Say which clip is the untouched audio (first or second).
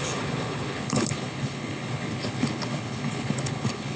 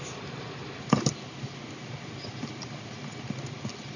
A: second